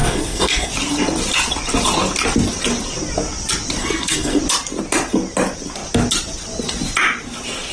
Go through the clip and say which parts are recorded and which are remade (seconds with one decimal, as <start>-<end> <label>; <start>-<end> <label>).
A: 0.0-0.7 remade; 0.7-3.8 recorded; 3.8-4.4 remade; 4.4-7.7 recorded